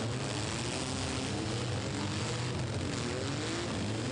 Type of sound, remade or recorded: recorded